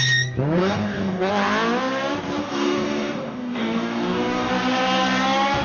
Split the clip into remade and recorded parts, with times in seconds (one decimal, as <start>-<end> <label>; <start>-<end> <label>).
0.0-0.6 recorded; 0.6-1.3 remade; 1.3-2.4 recorded; 2.4-4.5 remade; 4.5-5.6 recorded